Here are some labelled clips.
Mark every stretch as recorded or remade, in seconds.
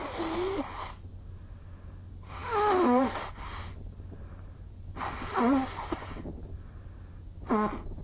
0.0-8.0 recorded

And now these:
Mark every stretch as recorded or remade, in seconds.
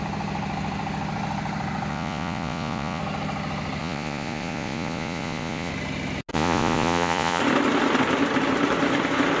0.0-1.9 recorded; 1.9-3.0 remade; 3.0-3.8 recorded; 3.8-5.7 remade; 5.7-6.3 recorded; 6.3-7.4 remade; 7.4-9.4 recorded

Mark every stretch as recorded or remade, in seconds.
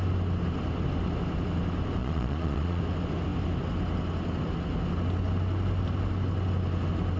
0.0-2.0 recorded; 2.0-2.8 remade; 2.8-7.2 recorded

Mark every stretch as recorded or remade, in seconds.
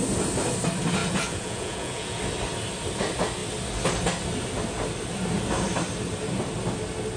0.0-1.0 recorded; 1.0-2.2 remade; 2.2-7.2 recorded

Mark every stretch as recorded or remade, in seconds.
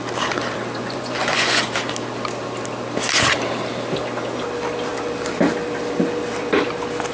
0.0-0.8 recorded; 0.8-1.7 remade; 1.7-7.1 recorded